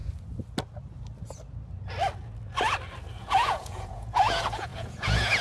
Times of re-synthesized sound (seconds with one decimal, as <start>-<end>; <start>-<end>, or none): 3.2-5.4